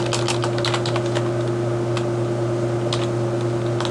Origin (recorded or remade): recorded